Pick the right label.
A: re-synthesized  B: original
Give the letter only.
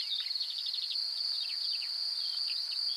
B